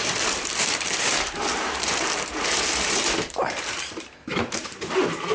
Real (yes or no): no